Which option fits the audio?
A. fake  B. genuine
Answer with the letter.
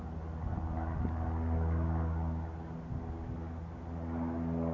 B